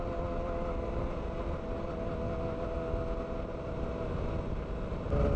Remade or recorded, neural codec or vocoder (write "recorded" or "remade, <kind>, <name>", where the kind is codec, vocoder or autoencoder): recorded